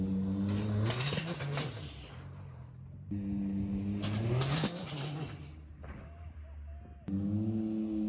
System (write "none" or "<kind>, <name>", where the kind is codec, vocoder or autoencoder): none